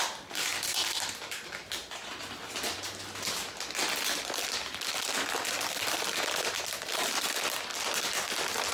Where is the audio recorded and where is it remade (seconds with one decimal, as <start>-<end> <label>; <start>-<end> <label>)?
0.0-8.7 recorded